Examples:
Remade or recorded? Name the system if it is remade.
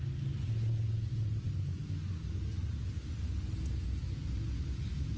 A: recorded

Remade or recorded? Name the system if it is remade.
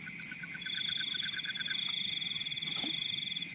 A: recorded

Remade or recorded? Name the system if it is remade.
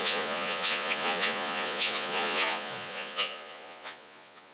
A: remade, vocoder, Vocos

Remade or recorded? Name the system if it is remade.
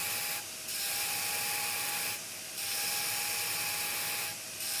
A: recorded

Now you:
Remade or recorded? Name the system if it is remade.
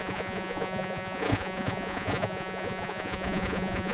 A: remade, vocoder, Vocos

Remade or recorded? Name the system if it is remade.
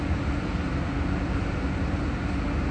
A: recorded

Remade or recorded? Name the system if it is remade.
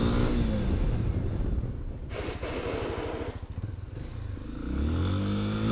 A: recorded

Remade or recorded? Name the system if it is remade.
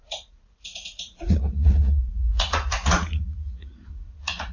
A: remade, vocoder, Vocos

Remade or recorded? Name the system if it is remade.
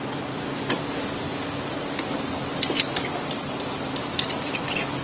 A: recorded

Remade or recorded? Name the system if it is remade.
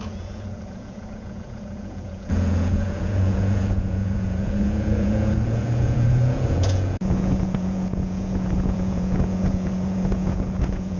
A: remade, vocoder, Vocos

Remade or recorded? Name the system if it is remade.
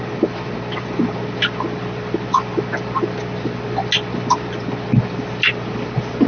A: recorded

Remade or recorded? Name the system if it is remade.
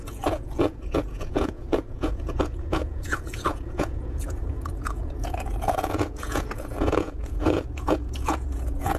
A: remade, vocoder, Vocos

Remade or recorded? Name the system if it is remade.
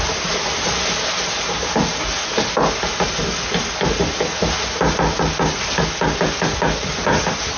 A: recorded